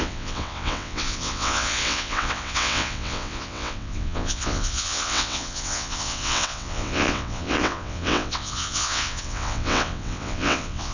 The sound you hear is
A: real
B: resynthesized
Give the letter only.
B